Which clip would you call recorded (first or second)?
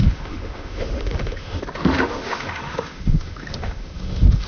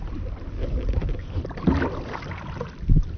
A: second